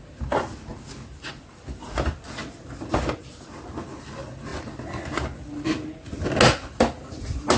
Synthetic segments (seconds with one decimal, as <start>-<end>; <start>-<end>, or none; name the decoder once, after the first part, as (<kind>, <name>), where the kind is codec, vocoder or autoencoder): none